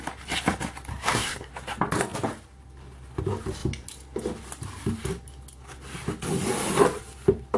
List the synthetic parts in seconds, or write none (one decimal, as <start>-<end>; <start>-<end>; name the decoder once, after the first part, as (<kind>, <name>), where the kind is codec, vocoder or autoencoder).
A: 0.9-1.5 (codec, SNAC)